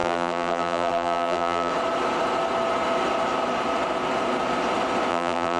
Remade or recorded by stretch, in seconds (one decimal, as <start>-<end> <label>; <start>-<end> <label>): 0.0-1.7 remade; 1.7-5.1 recorded; 5.1-5.6 remade